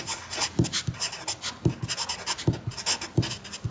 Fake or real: real